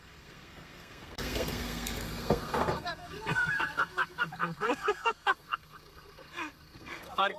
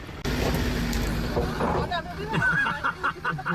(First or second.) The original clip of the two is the second